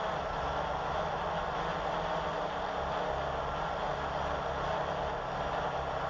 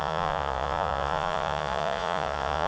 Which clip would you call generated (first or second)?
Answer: second